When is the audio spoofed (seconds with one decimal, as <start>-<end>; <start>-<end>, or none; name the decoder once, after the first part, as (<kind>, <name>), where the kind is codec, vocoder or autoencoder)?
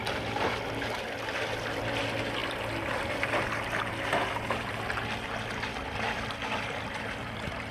none